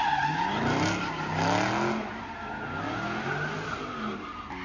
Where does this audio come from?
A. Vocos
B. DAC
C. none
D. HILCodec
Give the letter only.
C